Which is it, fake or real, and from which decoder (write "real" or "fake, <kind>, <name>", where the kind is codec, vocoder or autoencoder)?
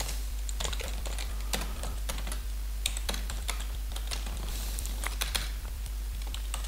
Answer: fake, vocoder, BigVGAN v2